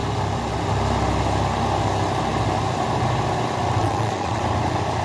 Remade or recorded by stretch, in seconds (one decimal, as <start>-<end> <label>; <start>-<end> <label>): 0.0-3.8 recorded; 3.8-4.4 remade; 4.4-5.0 recorded